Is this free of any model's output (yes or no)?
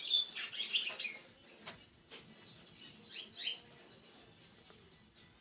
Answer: yes